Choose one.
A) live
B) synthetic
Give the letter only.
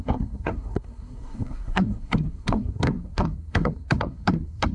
B